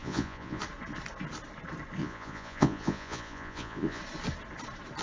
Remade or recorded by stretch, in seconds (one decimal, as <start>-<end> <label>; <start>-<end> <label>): 0.0-0.6 remade; 0.6-2.0 recorded; 2.0-4.0 remade; 4.0-5.0 recorded

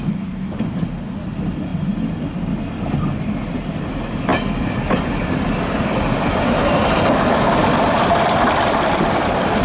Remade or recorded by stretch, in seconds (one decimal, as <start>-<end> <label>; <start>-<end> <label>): 0.0-4.3 recorded; 4.3-8.9 remade; 8.9-9.6 recorded